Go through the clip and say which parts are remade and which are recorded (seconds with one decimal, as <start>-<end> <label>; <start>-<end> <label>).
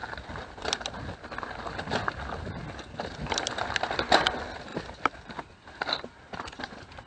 0.0-4.7 recorded; 4.7-6.0 remade; 6.0-7.1 recorded